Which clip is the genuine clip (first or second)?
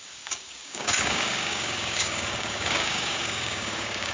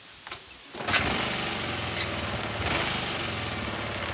second